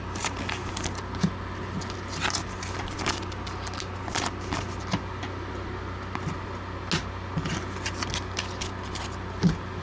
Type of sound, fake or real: real